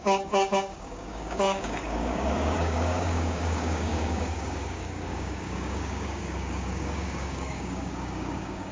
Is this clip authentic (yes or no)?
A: no